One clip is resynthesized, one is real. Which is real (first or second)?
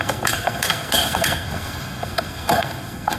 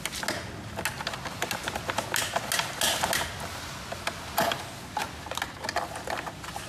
second